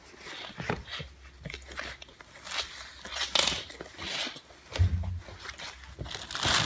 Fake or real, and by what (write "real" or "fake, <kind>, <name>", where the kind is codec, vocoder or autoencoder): real